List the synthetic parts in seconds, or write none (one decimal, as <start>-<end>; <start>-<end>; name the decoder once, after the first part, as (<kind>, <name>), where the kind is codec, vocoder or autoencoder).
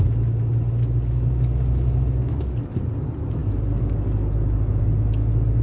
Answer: none